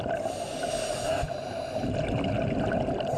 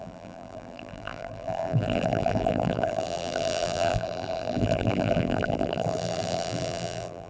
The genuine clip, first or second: first